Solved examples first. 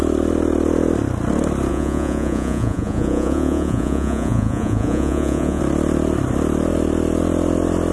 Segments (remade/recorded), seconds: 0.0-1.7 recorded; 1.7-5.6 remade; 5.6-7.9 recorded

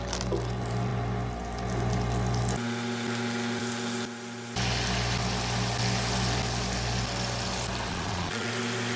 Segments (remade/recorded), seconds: 0.0-7.9 recorded; 7.9-8.5 remade; 8.5-9.0 recorded